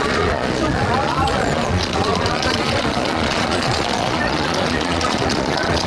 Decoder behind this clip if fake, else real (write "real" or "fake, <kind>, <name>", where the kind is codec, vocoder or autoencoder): fake, vocoder, Vocos